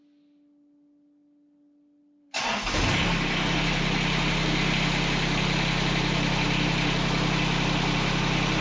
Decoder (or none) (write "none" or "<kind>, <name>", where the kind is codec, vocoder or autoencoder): none